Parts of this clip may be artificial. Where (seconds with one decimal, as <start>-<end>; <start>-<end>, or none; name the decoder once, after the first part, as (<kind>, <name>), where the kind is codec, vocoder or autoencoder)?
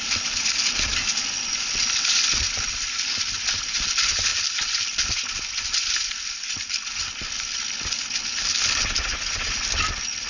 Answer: none